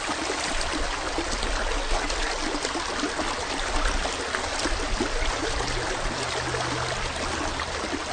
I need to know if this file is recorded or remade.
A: recorded